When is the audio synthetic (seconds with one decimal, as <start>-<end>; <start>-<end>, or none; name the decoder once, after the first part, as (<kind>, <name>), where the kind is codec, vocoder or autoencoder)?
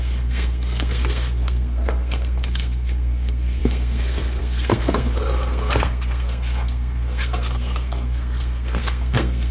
0.0-9.5 (codec, SNAC)